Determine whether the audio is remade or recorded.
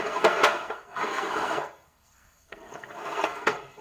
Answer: remade